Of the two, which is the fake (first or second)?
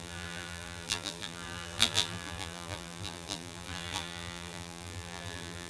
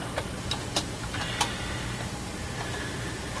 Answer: first